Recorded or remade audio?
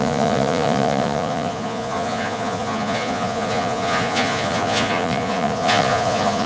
remade